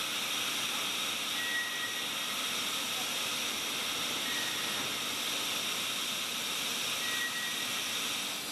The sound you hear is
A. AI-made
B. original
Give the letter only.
B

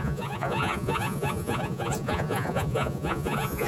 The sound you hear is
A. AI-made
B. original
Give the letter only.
A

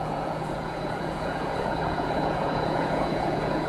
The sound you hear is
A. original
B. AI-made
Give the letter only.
B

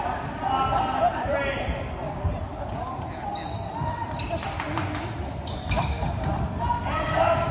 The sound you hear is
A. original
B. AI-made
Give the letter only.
A